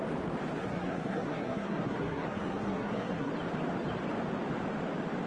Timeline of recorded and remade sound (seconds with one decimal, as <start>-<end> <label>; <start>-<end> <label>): 0.0-0.6 recorded; 0.6-3.3 remade; 3.3-5.3 recorded